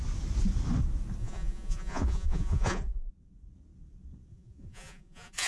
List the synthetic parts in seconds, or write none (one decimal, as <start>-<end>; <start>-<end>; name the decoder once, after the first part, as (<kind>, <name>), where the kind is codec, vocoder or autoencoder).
1.2-3.1 (vocoder, Vocos); 4.3-5.5